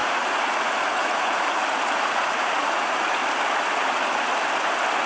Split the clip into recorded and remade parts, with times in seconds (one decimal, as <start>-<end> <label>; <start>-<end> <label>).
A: 0.0-3.2 remade; 3.2-5.1 recorded